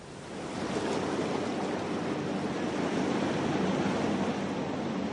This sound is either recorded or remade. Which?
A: recorded